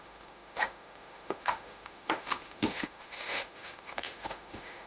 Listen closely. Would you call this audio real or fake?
fake